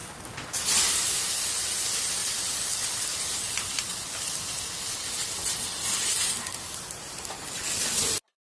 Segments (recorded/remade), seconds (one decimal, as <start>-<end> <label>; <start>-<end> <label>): 0.0-8.6 recorded